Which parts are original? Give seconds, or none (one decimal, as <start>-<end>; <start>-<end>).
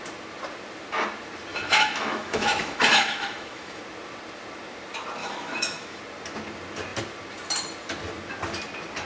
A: 0.0-1.5; 3.8-5.2; 6.0-9.1